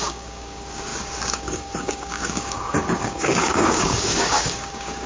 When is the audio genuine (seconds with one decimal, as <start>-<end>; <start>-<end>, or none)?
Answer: none